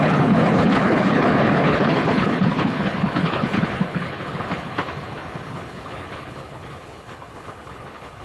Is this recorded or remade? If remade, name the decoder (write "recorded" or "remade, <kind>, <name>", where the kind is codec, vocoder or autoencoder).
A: remade, codec, HILCodec